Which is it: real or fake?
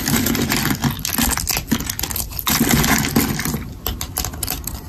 real